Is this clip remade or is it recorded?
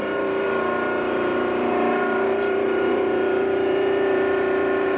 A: remade